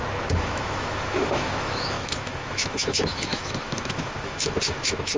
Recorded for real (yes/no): no